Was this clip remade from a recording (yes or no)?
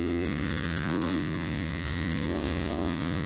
yes